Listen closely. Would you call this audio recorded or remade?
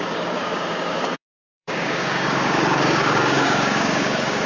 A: remade